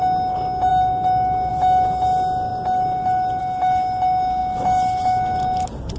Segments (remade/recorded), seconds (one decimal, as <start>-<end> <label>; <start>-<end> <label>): 0.0-6.0 recorded